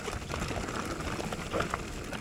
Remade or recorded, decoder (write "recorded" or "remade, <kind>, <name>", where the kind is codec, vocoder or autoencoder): recorded